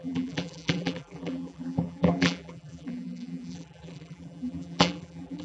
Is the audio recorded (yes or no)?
no